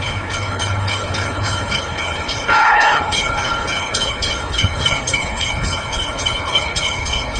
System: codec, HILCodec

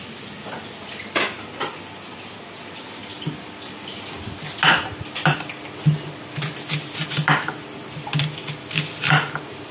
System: none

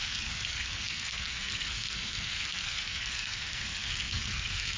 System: codec, SNAC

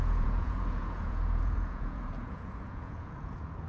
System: vocoder, Vocos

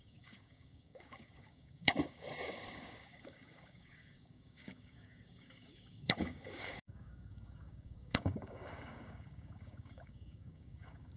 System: codec, DAC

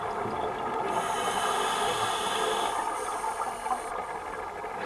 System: none